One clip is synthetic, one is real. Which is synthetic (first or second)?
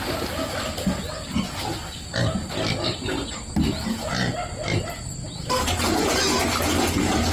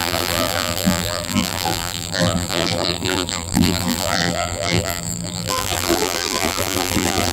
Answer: second